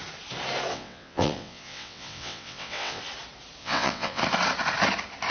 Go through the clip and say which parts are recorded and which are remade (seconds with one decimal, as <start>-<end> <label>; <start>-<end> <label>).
0.0-0.7 recorded; 0.7-3.0 remade; 3.0-3.6 recorded; 3.6-4.2 remade; 4.2-5.3 recorded